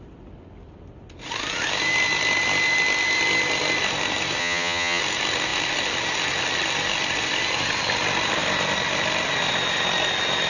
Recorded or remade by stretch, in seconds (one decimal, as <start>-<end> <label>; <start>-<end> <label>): 0.0-4.4 recorded; 4.4-5.0 remade; 5.0-10.5 recorded